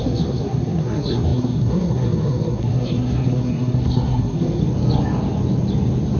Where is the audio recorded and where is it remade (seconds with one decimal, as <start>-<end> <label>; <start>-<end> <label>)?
0.0-4.6 remade; 4.6-6.2 recorded